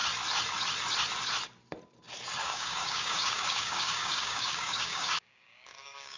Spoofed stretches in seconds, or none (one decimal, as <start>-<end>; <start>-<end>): 2.4-6.2